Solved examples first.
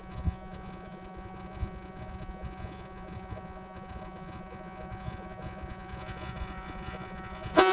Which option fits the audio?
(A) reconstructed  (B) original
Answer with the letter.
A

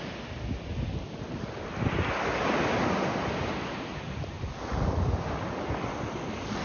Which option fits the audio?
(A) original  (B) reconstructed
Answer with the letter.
A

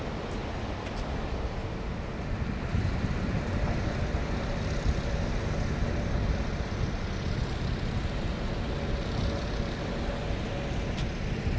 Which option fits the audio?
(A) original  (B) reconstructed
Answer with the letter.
A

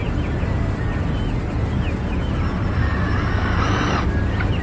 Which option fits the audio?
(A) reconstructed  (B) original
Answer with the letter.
B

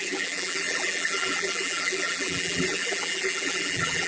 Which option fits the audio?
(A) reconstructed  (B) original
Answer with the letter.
A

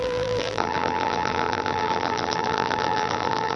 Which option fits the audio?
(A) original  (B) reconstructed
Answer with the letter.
B